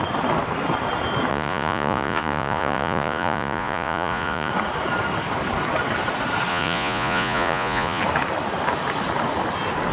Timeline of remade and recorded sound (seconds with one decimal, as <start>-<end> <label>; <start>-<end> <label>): 0.0-1.3 recorded; 1.3-4.5 remade; 4.5-6.5 recorded; 6.5-8.0 remade; 8.0-9.9 recorded